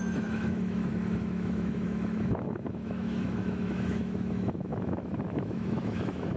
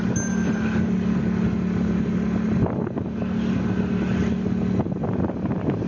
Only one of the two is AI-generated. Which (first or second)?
first